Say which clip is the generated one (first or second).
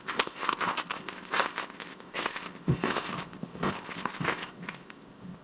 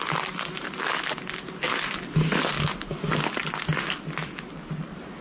first